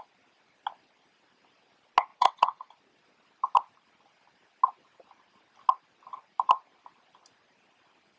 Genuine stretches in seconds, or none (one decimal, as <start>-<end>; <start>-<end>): 0.0-2.1; 2.7-8.2